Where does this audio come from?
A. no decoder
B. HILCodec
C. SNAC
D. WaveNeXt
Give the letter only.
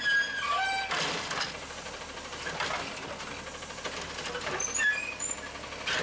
A